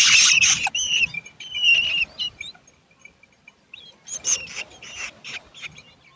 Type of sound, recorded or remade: recorded